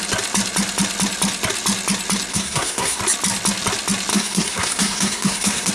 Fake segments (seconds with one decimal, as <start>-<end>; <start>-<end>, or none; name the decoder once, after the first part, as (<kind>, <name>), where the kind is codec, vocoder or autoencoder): 2.3-3.0 (codec, SNAC); 4.1-5.7